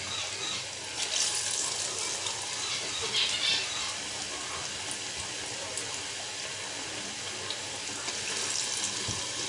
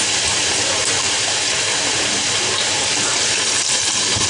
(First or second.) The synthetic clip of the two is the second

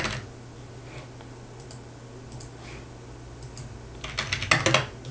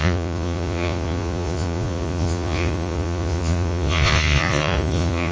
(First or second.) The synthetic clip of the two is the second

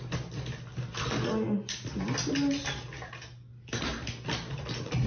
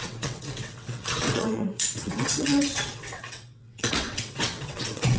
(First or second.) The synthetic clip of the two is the second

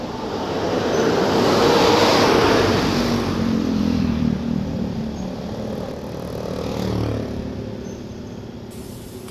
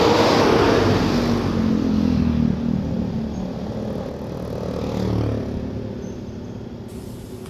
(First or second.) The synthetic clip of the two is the first